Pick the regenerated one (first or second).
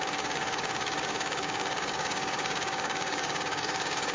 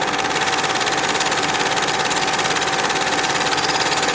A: first